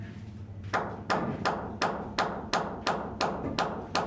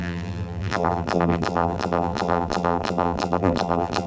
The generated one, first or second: second